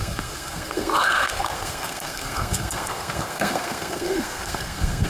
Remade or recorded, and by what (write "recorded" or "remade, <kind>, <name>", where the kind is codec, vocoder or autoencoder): remade, codec, SNAC